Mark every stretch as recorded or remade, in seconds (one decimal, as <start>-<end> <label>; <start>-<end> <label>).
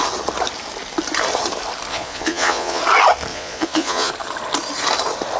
0.0-1.9 recorded; 1.9-2.8 remade; 2.8-3.3 recorded; 3.3-4.1 remade; 4.1-5.4 recorded